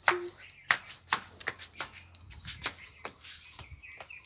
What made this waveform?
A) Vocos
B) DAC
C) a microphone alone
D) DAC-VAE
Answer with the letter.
C